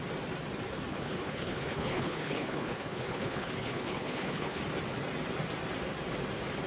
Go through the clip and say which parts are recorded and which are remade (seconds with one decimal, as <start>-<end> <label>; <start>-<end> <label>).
0.0-0.9 recorded; 0.9-4.6 remade; 4.6-6.7 recorded